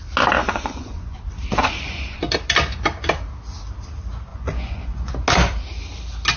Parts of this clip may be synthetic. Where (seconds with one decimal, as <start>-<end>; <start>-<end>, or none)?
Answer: 0.4-1.2; 1.6-2.2; 4.3-5.1